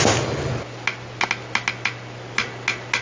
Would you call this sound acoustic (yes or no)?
yes